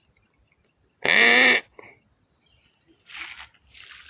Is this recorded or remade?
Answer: recorded